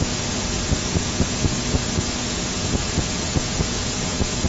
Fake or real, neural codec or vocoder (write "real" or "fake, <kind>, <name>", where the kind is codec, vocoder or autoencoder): fake, vocoder, Vocos